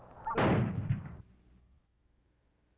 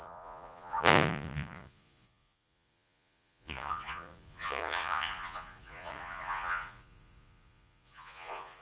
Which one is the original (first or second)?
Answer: first